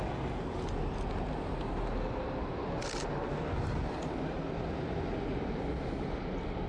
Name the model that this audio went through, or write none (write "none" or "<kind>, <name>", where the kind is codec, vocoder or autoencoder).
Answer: none